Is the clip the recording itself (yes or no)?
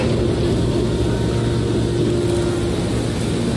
yes